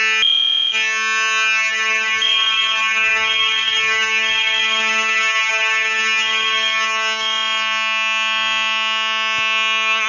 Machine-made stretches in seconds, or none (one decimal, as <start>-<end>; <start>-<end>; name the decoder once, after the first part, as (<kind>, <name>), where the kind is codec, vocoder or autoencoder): none